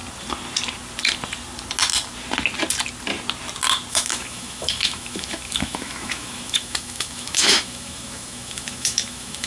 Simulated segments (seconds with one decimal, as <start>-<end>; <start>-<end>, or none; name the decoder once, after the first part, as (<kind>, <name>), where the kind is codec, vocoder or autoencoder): 3.9-9.5 (autoencoder, DAC-VAE)